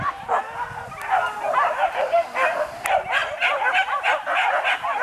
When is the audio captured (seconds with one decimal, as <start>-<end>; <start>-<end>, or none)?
0.0-5.0